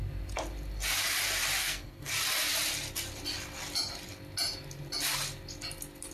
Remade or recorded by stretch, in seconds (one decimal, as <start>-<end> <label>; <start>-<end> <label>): 0.0-1.6 recorded; 1.6-2.1 remade; 2.1-6.1 recorded